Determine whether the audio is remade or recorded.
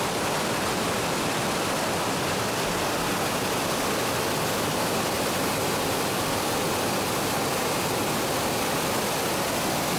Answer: recorded